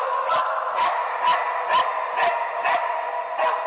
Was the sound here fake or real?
real